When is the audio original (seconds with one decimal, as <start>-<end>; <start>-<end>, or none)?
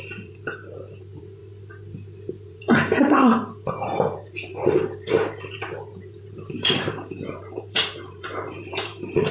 1.4-2.3